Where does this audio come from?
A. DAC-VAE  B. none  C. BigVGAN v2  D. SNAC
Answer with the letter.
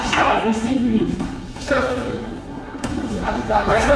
D